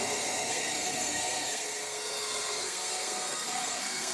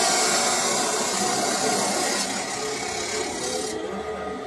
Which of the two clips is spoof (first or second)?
first